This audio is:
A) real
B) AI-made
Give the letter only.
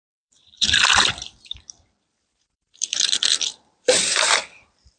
B